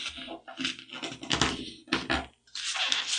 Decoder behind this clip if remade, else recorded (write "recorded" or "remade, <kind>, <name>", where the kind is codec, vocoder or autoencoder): recorded